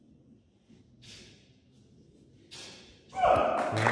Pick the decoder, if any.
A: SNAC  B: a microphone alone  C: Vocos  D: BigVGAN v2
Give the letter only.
B